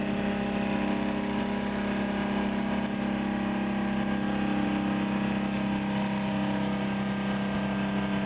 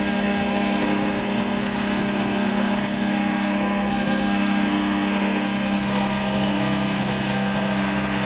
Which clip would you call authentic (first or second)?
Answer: first